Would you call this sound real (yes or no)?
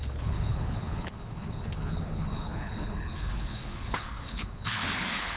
no